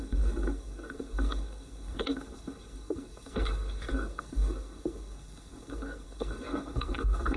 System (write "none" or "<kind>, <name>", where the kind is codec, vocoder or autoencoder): codec, SNAC